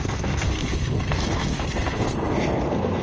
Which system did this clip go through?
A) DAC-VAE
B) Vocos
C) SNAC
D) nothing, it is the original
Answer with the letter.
C